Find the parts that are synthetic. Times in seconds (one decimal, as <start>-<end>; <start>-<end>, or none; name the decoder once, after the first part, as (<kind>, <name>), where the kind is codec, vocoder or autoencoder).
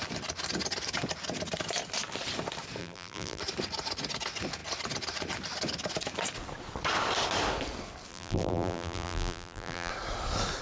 2.8-3.4 (vocoder, BigVGAN v2); 8.1-9.9